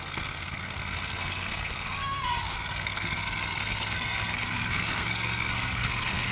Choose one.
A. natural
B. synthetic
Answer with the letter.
B